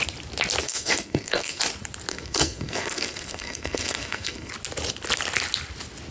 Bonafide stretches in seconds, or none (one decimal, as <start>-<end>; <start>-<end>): 0.0-0.6; 1.6-2.1; 4.5-6.1